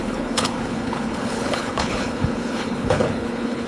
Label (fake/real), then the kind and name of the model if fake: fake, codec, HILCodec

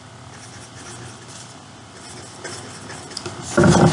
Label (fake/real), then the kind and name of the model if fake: real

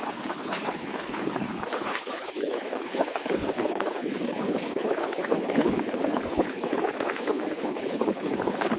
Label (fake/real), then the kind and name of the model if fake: fake, codec, HILCodec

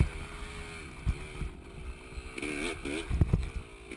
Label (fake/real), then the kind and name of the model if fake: real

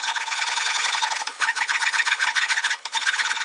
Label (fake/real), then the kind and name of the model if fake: fake, codec, HILCodec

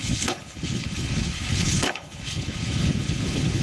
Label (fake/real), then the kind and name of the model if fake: fake, codec, HILCodec